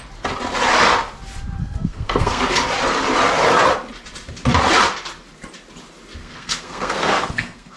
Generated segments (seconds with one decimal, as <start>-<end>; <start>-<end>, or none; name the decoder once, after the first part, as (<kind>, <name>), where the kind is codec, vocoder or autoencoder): 1.6-2.4 (codec, SNAC); 6.2-7.8

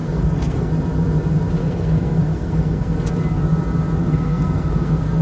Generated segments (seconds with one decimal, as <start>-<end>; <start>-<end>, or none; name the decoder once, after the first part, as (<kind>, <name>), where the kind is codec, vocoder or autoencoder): 0.0-0.7 (codec, SNAC); 1.6-3.1; 4.0-5.2

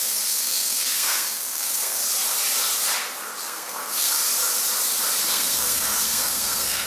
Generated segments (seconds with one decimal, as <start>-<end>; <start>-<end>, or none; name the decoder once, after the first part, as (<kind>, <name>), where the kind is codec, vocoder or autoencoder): 0.0-2.0 (codec, SNAC); 3.4-4.2; 5.2-6.9

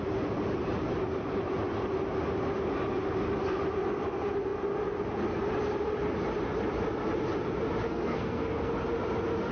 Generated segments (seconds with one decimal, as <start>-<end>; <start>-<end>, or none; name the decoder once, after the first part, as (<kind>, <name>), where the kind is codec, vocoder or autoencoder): 7.9-8.7 (codec, SNAC)

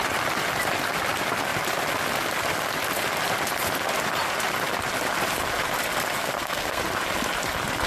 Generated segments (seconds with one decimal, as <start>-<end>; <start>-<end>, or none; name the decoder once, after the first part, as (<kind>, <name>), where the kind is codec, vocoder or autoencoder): 6.2-6.8 (codec, SNAC)

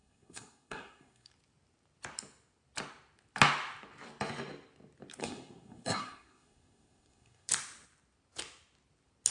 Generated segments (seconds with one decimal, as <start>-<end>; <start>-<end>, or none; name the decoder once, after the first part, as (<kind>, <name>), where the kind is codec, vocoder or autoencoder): 0.0-1.3 (codec, SNAC); 5.2-7.5

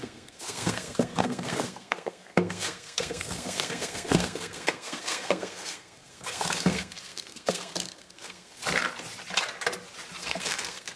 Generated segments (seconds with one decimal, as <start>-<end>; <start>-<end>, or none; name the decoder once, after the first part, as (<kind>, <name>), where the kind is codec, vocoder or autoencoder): 0.0-8.6 (codec, SNAC); 10.2-11.0

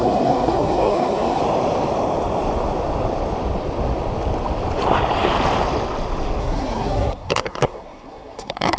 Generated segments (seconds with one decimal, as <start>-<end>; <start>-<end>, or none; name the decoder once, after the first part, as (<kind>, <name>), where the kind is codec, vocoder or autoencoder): 0.0-1.4 (codec, SNAC); 6.4-8.8